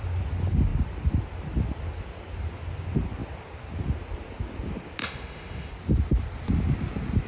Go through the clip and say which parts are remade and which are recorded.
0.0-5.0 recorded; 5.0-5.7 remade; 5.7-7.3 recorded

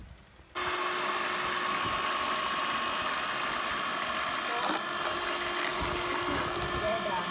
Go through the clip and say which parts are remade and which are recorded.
0.0-7.3 recorded